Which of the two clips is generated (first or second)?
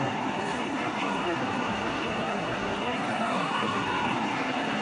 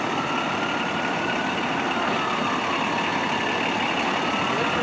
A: first